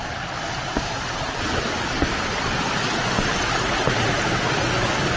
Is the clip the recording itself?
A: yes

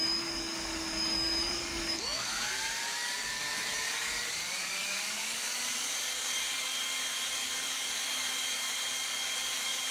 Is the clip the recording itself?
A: no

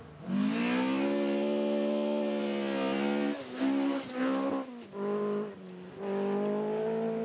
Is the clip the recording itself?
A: yes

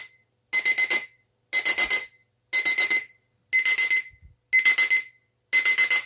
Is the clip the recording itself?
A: yes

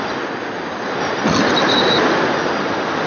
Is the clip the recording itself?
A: yes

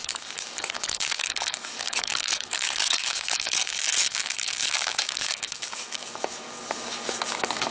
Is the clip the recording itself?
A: no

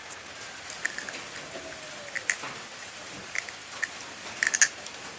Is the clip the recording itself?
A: yes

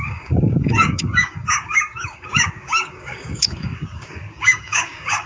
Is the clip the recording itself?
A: no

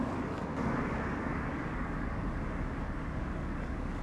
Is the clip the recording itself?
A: no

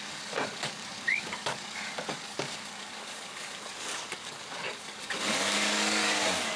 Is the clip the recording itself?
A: no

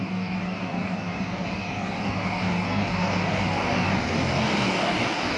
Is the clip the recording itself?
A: no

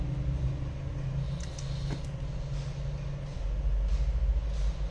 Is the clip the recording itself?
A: yes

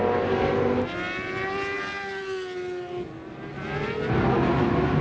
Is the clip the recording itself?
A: yes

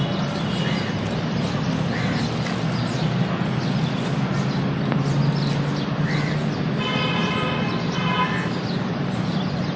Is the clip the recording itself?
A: yes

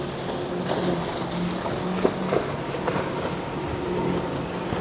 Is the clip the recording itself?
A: yes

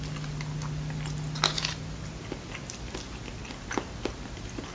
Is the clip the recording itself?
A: yes